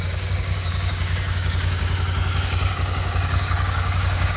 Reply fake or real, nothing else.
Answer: fake